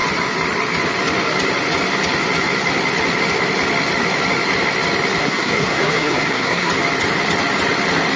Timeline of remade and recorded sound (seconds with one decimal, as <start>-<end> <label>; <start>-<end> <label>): 0.0-5.2 recorded; 5.2-6.7 remade; 6.7-8.2 recorded